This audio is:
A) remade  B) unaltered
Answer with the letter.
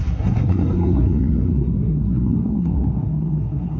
A